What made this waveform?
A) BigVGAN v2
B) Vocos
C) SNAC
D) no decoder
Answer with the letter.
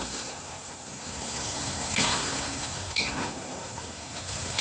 C